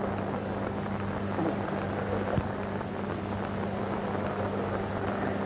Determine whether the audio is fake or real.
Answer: real